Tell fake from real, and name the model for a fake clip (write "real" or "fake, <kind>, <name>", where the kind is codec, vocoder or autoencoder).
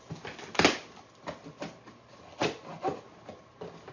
real